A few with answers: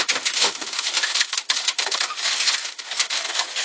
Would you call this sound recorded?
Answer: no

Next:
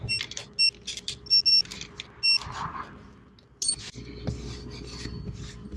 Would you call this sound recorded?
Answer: yes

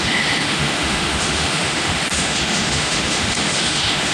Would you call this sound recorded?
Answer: no